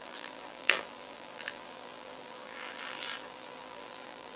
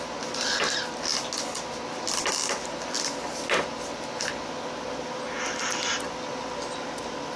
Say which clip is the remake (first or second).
first